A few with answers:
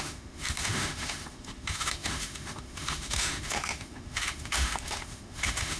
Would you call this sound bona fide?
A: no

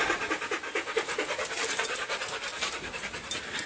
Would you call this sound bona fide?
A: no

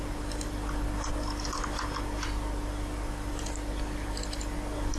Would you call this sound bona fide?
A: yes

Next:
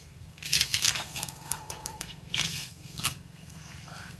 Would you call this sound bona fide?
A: no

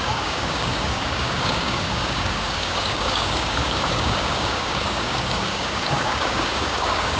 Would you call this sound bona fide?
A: no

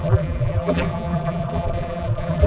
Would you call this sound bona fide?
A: no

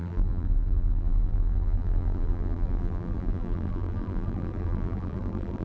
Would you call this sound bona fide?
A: no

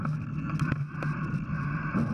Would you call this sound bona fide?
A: yes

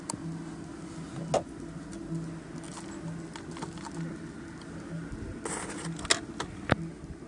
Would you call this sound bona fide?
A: yes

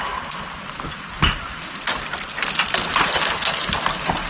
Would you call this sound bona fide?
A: yes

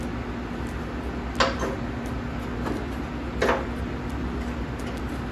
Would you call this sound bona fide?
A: yes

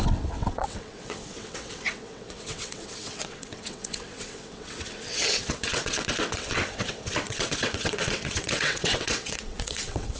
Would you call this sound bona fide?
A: no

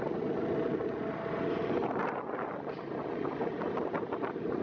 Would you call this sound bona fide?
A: yes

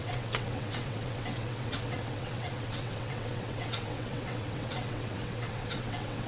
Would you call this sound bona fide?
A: no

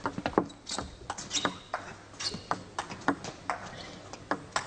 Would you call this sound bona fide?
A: yes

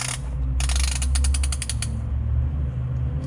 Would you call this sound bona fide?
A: yes